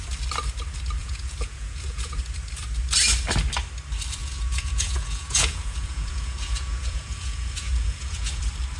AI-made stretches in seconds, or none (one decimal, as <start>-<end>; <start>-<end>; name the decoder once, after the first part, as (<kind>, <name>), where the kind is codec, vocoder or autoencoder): 1.0-2.2 (vocoder, Vocos); 4.2-8.4